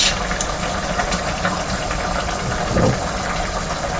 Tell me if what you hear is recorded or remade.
recorded